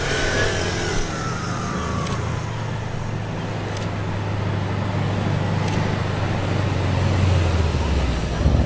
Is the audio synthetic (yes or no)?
no